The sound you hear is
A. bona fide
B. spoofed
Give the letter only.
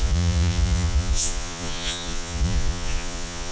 B